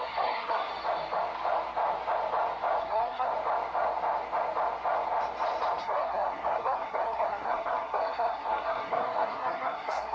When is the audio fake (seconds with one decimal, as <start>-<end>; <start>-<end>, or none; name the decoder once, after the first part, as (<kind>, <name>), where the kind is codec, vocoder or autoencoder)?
0.0-0.7 (codec, SNAC); 2.8-3.3; 5.8-10.1